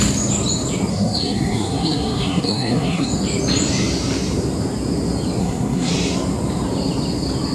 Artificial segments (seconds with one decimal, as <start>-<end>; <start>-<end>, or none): 0.9-3.1; 5.4-5.9